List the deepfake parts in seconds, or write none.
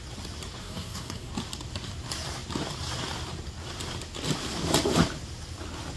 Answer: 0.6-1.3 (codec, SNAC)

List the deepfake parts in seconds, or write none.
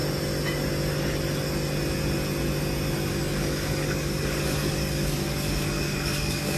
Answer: 3.1-6.6 (codec, DAC)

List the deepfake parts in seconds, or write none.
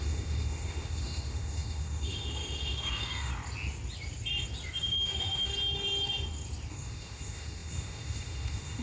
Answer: 0.0-3.3 (autoencoder, DAC-VAE); 4.8-5.5; 6.7-8.8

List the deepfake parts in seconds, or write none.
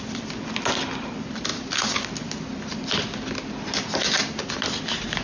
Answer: none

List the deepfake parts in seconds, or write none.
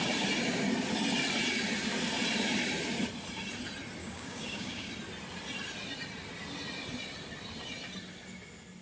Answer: 4.0-4.9 (codec, DAC)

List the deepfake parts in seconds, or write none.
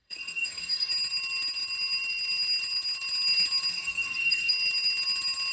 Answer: 0.0-0.9 (codec, DAC); 3.7-4.5